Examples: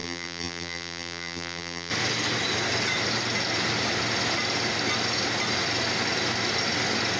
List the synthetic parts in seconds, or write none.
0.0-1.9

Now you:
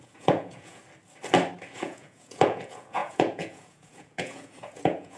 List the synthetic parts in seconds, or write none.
0.0-0.8; 1.7-5.2